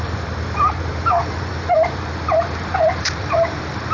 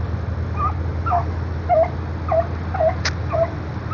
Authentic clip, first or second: second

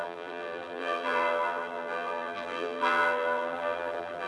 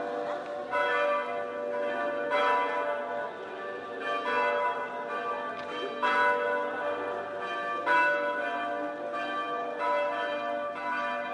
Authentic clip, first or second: second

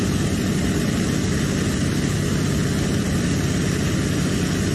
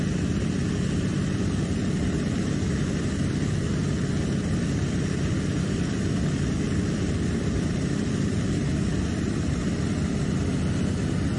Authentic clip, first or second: first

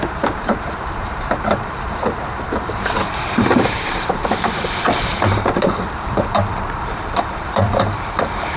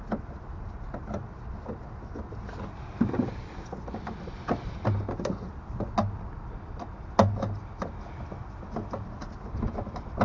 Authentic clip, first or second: second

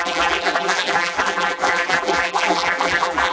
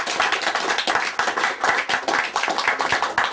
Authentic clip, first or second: second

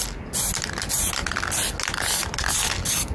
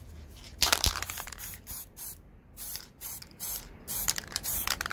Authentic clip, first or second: first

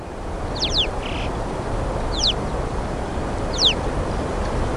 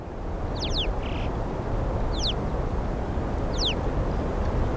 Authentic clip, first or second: second